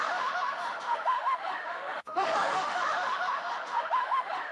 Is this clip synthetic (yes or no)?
yes